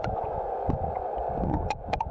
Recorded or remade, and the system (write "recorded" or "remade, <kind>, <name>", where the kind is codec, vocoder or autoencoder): remade, vocoder, Vocos